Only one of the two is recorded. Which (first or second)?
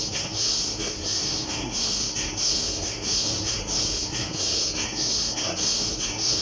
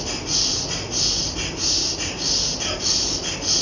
second